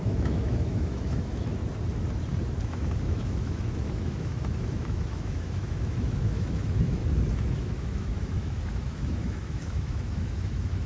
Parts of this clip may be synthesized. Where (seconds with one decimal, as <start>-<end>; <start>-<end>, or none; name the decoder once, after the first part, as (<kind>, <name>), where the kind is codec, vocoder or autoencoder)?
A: 0.0-1.6 (autoencoder, DAC-VAE); 2.4-7.0; 7.5-10.9